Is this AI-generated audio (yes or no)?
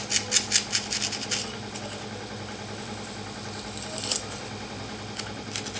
no